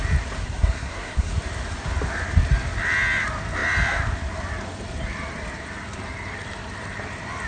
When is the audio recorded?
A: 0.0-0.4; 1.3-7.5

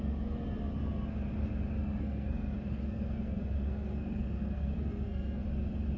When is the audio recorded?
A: 0.0-1.8; 5.4-6.0

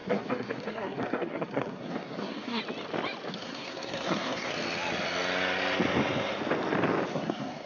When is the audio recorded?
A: 2.6-3.3; 4.5-7.1

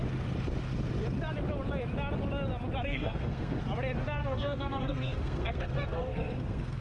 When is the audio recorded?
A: 0.0-2.9; 3.6-4.2

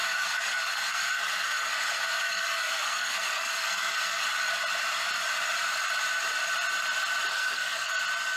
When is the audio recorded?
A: 4.2-7.3; 8.0-8.4

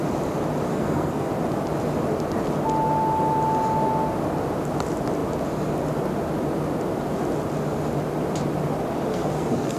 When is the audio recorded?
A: 0.0-0.7; 1.3-9.1